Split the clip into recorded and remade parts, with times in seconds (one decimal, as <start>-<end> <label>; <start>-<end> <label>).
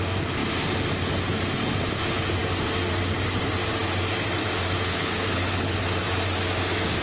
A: 0.0-4.9 recorded; 4.9-5.8 remade; 5.8-7.0 recorded